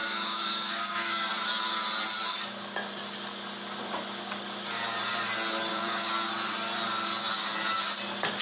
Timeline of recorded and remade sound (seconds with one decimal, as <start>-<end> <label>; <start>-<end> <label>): 0.0-1.3 remade; 1.3-5.7 recorded; 5.7-6.3 remade; 6.3-8.4 recorded

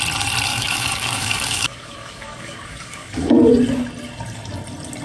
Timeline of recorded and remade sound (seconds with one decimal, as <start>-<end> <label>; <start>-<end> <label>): 0.0-0.5 recorded; 0.5-3.5 remade; 3.5-5.0 recorded